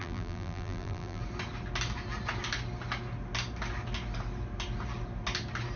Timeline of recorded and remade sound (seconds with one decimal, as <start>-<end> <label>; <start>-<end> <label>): 0.0-1.2 remade; 1.2-5.8 recorded